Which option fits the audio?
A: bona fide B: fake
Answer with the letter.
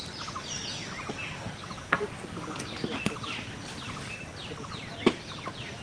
A